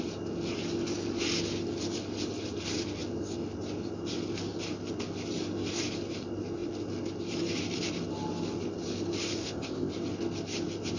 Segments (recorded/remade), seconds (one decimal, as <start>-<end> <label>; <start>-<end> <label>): 0.0-9.4 recorded; 9.4-9.9 remade; 9.9-11.0 recorded

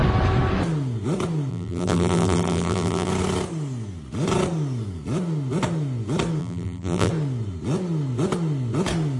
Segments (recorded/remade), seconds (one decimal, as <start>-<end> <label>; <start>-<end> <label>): 0.0-1.5 recorded; 1.5-3.1 remade; 3.1-6.4 recorded; 6.4-7.1 remade; 7.1-9.2 recorded

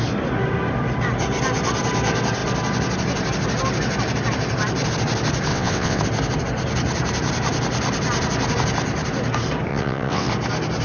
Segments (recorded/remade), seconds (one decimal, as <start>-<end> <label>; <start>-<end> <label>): 0.0-5.5 recorded; 5.5-6.0 remade; 6.0-9.7 recorded; 9.7-10.3 remade; 10.3-10.8 recorded

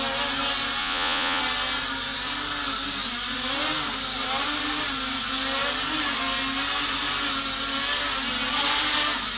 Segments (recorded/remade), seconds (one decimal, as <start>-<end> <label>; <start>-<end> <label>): 0.0-0.8 recorded; 0.8-1.4 remade; 1.4-9.4 recorded

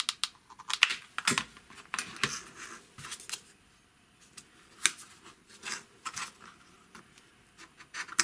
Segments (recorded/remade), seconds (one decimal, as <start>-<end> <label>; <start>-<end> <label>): 0.0-8.2 recorded

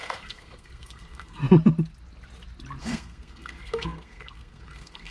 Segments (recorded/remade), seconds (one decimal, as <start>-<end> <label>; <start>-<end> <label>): 0.0-1.4 remade; 1.4-2.8 recorded; 2.8-5.1 remade

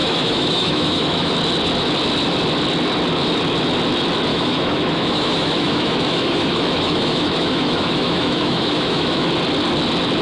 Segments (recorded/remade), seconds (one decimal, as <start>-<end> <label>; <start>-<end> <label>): 0.0-1.3 remade; 1.3-4.3 recorded; 4.3-9.3 remade; 9.3-10.2 recorded